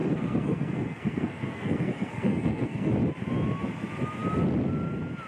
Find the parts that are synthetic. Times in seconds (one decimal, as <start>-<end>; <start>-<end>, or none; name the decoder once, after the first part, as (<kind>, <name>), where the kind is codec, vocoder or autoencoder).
0.0-2.9 (codec, SNAC)